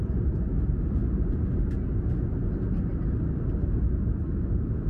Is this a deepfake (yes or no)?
no